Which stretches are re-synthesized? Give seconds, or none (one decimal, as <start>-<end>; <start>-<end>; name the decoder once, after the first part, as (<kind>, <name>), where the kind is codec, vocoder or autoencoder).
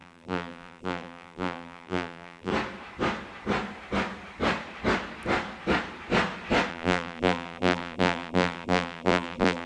0.0-2.5 (vocoder, BigVGAN v2); 6.7-9.7